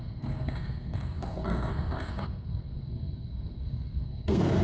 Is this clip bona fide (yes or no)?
no